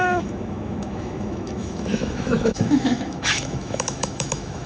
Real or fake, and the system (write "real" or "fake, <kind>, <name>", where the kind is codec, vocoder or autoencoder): fake, autoencoder, DAC-VAE